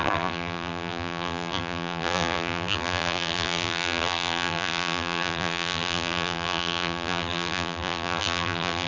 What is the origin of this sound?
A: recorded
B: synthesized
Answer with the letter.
B